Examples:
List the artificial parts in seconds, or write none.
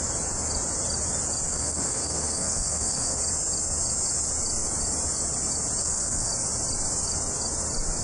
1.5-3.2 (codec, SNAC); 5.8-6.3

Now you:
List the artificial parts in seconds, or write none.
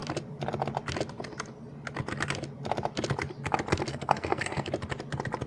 3.9-4.7 (codec, SNAC)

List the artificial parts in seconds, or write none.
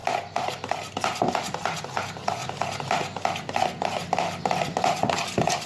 none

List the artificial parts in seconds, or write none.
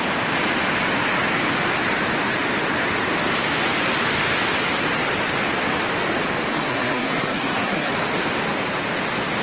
6.5-7.9 (codec, SNAC)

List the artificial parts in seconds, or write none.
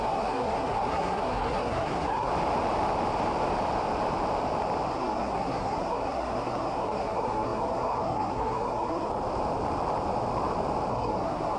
0.0-2.3 (codec, SNAC); 4.9-9.1; 10.9-11.6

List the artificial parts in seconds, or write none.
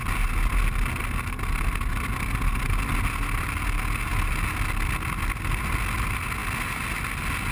none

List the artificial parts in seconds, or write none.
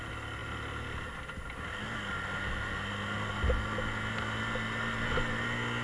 none